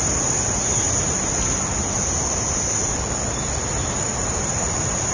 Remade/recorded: recorded